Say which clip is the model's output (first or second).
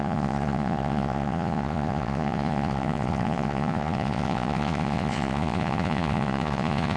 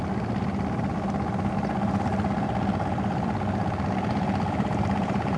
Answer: first